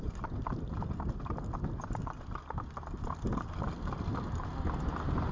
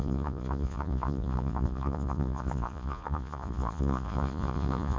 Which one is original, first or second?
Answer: first